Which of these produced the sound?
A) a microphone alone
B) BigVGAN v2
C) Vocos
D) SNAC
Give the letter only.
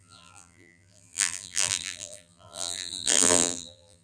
B